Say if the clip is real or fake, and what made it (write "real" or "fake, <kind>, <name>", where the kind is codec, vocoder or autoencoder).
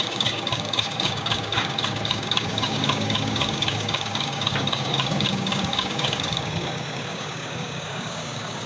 fake, codec, DAC